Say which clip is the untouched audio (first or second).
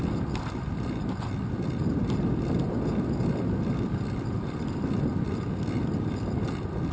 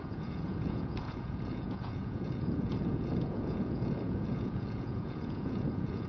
first